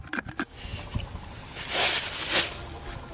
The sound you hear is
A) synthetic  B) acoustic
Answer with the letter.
B